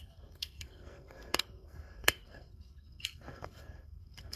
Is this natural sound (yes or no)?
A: no